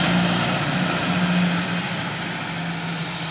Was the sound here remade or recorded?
recorded